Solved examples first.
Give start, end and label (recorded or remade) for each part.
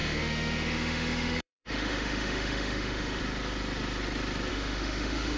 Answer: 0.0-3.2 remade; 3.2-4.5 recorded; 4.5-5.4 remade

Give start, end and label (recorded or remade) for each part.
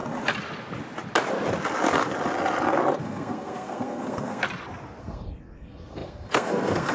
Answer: 0.0-3.0 recorded; 3.0-4.4 remade; 4.4-5.0 recorded; 5.0-6.9 remade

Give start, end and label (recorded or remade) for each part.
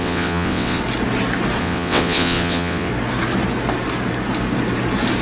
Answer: 0.0-0.8 remade; 0.8-1.6 recorded; 1.6-2.9 remade; 2.9-5.2 recorded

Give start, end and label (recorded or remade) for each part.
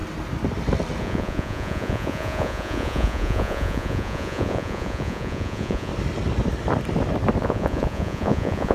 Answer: 0.0-1.0 recorded; 1.0-5.9 remade; 5.9-7.4 recorded; 7.4-8.7 remade